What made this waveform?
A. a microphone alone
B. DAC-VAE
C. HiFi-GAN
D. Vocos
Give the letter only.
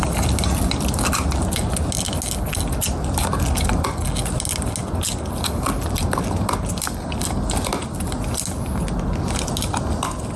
A